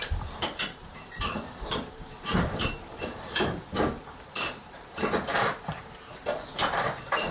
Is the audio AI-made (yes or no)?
yes